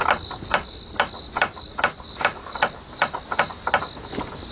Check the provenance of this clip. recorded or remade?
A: recorded